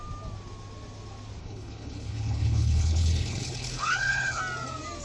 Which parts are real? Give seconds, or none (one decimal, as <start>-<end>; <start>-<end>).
0.0-1.4; 4.4-5.0